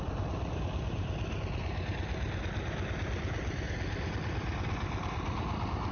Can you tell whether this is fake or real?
real